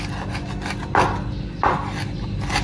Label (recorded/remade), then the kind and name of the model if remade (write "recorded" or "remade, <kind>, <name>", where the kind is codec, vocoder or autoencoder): recorded